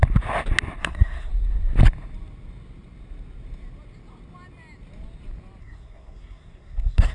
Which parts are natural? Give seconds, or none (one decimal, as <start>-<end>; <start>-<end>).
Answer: 0.0-0.8; 1.3-5.6